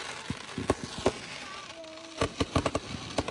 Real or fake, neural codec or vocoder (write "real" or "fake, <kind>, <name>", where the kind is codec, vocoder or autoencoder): real